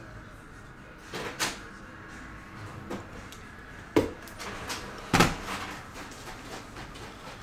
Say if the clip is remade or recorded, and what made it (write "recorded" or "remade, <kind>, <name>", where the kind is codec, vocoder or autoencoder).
recorded